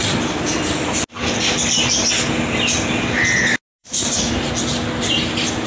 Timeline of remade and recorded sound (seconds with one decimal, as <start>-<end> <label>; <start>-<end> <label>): 0.0-3.8 recorded; 3.8-4.5 remade; 4.5-5.7 recorded